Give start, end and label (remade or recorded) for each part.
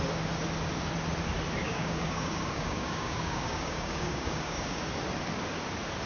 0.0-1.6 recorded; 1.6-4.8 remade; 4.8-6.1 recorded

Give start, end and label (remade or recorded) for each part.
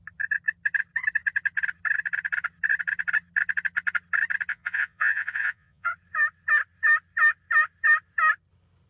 0.0-4.5 recorded; 4.5-5.9 remade; 5.9-8.9 recorded